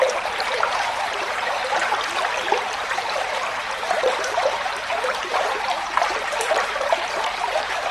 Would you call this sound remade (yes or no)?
yes